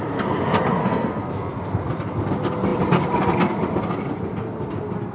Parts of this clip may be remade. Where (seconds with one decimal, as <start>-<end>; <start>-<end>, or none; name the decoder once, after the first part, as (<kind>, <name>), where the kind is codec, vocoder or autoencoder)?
0.8-1.5 (codec, SNAC)